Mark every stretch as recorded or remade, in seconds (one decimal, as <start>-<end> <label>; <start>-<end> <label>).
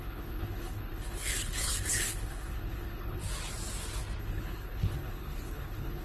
0.0-3.2 remade; 3.2-4.2 recorded; 4.2-6.0 remade